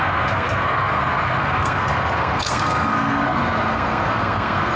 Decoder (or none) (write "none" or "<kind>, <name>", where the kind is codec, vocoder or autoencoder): codec, SNAC